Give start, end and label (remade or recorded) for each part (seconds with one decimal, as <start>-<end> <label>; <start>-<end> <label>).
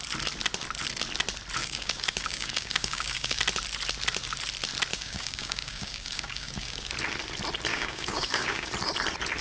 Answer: 0.0-1.6 recorded; 1.6-3.4 remade; 3.4-4.9 recorded; 4.9-6.9 remade; 6.9-7.7 recorded; 7.7-8.7 remade; 8.7-9.4 recorded